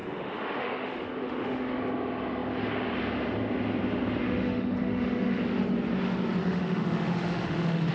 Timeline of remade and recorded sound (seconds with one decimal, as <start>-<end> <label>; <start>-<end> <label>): 0.0-1.8 remade; 1.8-4.2 recorded; 4.2-5.4 remade; 5.4-6.4 recorded; 6.4-7.9 remade